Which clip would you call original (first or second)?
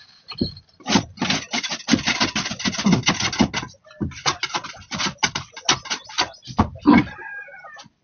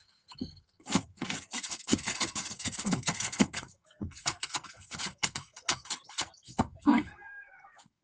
first